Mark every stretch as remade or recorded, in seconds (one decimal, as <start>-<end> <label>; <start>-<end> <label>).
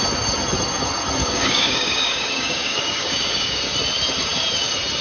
0.0-1.2 recorded; 1.2-3.6 remade; 3.6-5.0 recorded